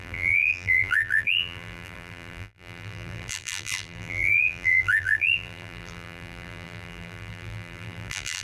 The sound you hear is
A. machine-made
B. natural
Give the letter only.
A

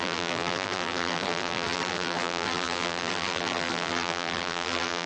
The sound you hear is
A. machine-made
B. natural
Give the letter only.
A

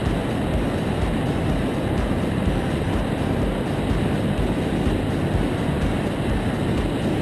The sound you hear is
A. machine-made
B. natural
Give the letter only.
B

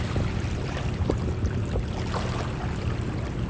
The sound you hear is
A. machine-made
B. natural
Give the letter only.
A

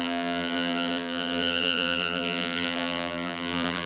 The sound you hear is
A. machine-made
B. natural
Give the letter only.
A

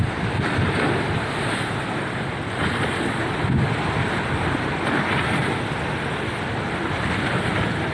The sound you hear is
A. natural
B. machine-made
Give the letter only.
A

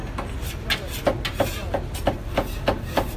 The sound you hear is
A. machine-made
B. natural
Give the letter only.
B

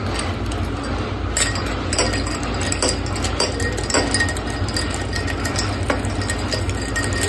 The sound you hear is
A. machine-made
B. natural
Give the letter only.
B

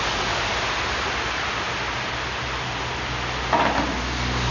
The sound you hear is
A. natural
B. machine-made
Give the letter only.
A